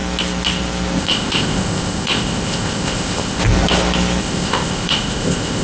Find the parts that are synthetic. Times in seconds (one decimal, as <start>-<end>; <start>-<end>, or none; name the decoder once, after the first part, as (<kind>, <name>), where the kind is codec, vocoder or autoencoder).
1.0-3.4 (codec, ZipCodec); 4.2-5.6